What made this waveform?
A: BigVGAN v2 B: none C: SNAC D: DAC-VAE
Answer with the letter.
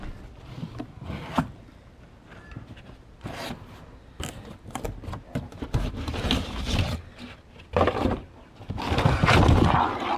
B